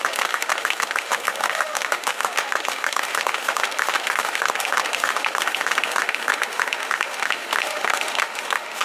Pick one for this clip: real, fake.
fake